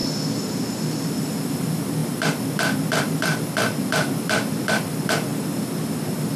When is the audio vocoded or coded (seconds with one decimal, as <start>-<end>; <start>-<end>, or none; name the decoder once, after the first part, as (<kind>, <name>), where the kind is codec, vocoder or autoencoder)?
1.5-5.3 (vocoder, BigVGAN v2)